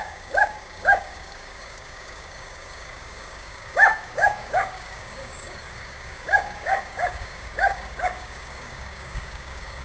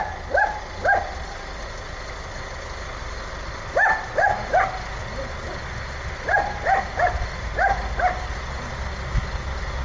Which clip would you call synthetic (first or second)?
first